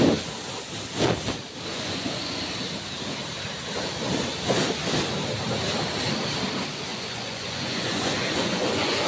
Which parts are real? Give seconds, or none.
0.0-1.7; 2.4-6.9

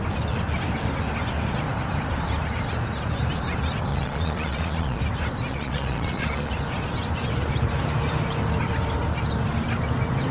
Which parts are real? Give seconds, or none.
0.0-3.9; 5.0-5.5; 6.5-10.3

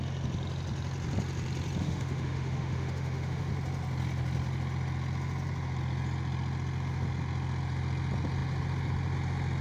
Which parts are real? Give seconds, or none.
0.0-1.8; 3.5-9.6